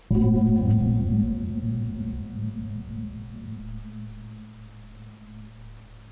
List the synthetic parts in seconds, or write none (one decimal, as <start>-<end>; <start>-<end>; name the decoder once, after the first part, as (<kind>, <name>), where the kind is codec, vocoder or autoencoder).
0.6-3.6 (vocoder, WaveNeXt)